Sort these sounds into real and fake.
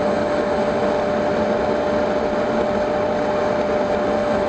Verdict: real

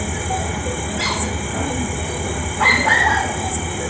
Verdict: real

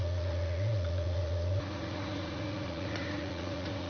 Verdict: fake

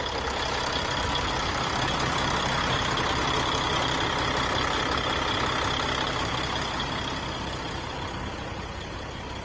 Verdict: real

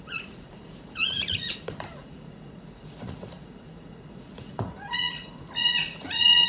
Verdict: fake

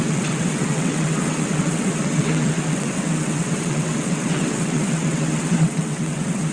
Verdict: fake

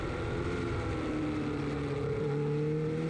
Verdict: real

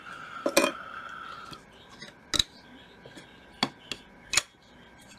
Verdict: real